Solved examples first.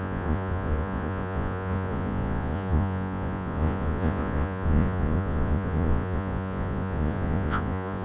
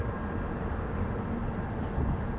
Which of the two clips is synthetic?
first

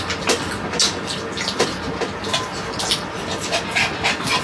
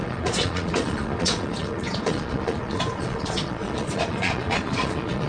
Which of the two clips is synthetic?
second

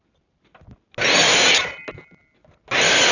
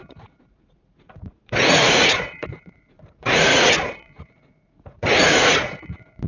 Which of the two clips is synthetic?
second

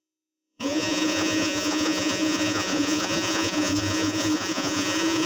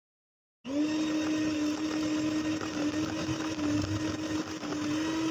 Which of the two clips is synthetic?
first